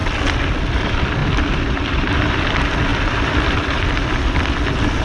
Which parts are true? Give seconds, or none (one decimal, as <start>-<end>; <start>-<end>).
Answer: 0.0-1.2; 2.5-2.9; 4.1-5.0